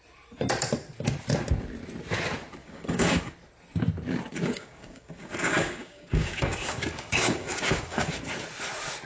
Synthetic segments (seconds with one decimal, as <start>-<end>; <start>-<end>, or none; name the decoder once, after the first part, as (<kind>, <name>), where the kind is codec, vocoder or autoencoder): 2.6-3.3 (codec, DAC); 4.3-8.3